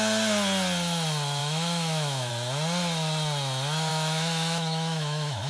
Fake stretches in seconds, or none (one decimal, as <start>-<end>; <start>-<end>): 1.4-2.3; 3.9-5.5